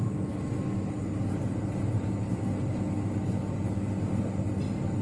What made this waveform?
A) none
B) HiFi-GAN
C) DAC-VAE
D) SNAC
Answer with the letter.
A